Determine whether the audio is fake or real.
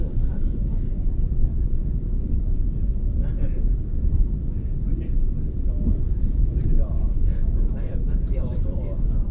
fake